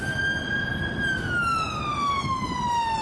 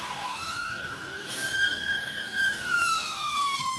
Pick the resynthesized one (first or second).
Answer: second